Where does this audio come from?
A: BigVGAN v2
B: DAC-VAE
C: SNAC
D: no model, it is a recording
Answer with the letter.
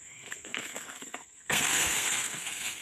C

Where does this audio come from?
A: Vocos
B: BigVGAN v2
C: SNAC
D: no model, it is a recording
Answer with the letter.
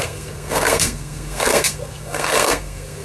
C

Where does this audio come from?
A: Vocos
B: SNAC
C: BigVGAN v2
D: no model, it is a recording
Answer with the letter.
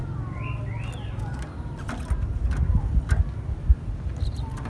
D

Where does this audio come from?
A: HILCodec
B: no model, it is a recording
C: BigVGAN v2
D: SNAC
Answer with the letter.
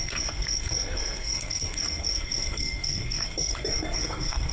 D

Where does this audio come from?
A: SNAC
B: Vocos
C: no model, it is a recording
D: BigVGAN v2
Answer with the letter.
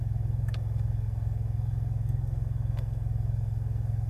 A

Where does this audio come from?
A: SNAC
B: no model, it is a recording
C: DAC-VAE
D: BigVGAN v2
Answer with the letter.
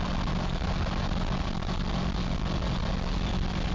B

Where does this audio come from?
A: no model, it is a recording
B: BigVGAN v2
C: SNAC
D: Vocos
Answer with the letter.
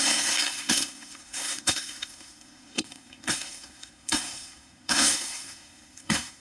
C